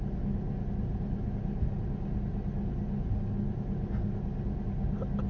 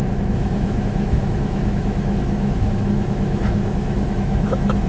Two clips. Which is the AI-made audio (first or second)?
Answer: second